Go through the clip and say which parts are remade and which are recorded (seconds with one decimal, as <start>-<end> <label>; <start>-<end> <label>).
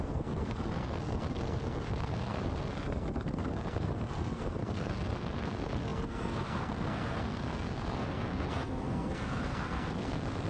0.0-10.5 remade